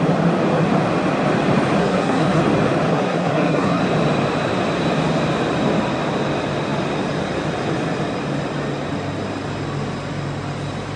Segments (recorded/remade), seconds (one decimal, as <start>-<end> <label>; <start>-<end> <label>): 0.0-1.8 recorded; 1.8-2.4 remade; 2.4-2.9 recorded; 2.9-3.8 remade; 3.8-11.0 recorded